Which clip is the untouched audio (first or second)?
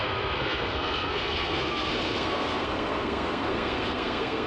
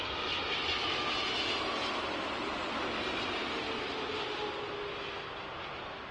second